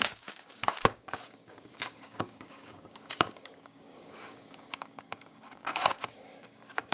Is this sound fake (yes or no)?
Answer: yes